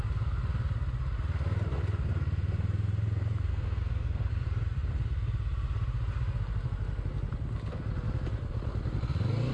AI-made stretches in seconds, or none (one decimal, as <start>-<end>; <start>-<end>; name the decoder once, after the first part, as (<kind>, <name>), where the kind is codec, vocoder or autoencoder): 3.5-4.3 (codec, SNAC)